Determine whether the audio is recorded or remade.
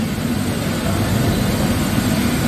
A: recorded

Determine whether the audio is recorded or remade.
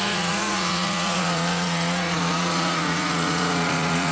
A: remade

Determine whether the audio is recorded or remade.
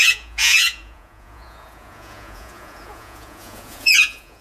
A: remade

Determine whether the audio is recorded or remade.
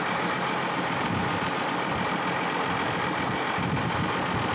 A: recorded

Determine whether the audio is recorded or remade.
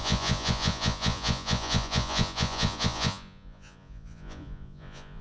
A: remade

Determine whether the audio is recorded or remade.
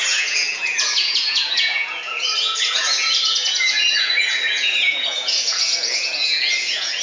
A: remade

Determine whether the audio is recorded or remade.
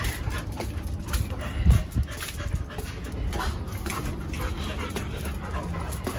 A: recorded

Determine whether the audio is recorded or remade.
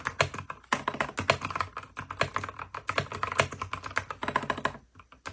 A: recorded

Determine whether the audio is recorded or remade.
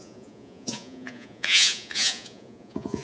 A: remade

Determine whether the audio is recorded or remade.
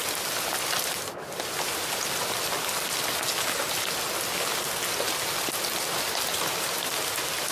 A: recorded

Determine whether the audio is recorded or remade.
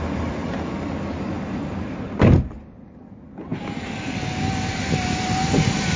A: recorded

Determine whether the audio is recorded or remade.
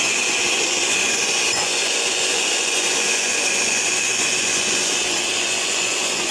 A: remade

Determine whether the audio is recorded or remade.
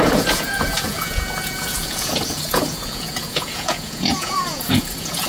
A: remade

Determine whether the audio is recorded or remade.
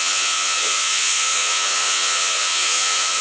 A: remade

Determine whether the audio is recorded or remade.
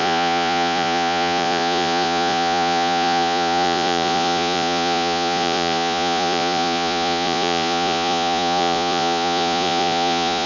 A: remade